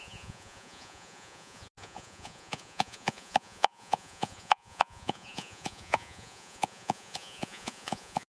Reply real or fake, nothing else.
fake